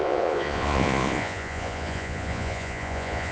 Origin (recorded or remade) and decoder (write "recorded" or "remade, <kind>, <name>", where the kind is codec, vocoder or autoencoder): remade, vocoder, Vocos